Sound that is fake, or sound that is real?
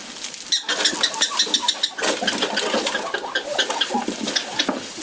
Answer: real